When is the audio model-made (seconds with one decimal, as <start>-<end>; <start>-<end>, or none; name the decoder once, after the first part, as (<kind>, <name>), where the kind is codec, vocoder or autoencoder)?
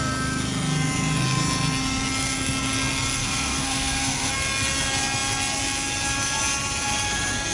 3.2-4.3 (codec, SNAC)